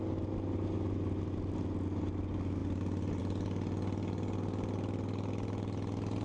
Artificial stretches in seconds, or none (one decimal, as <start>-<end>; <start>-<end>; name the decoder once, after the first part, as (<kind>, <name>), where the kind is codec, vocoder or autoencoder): none